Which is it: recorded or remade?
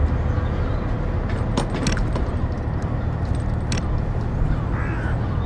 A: recorded